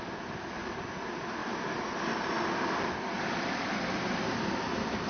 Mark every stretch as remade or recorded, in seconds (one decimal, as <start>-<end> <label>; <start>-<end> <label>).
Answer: 0.0-5.1 recorded